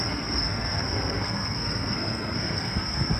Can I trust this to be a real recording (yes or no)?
no